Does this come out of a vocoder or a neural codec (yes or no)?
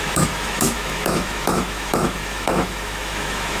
yes